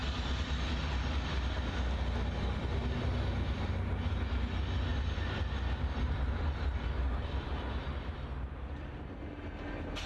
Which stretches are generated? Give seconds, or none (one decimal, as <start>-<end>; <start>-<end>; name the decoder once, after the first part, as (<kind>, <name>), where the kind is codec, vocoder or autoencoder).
4.9-9.4 (vocoder, BigVGAN v2)